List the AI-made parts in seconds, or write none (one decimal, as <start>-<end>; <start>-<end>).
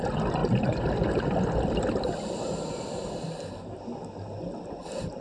0.4-0.9